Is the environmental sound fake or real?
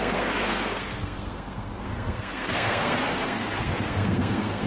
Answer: fake